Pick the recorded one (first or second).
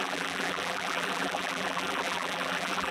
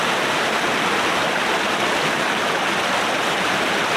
second